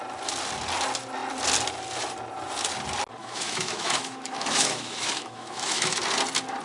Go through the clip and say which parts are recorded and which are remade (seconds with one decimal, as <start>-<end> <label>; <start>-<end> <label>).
0.0-3.2 recorded; 3.2-6.0 remade; 6.0-6.6 recorded